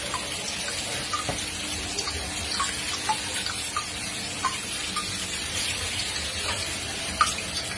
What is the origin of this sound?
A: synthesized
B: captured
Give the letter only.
B